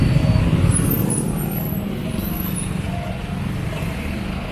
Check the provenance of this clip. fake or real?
real